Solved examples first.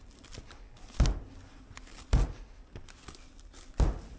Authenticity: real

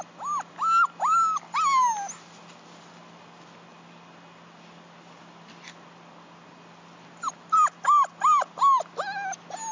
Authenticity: real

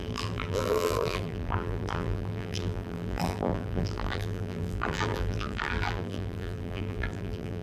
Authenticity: fake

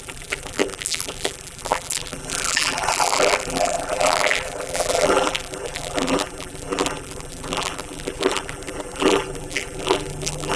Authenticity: fake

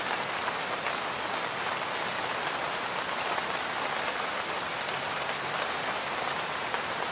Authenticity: real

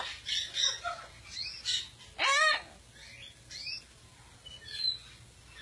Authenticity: real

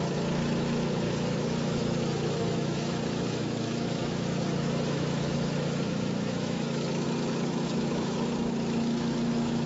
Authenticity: fake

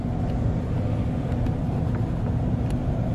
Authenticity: real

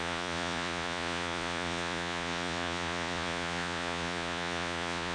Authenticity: fake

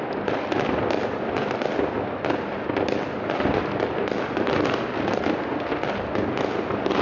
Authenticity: real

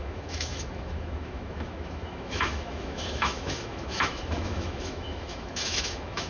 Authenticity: fake